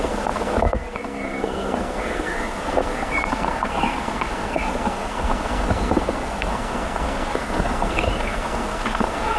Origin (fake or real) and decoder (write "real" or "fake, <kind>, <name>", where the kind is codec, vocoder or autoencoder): fake, codec, SNAC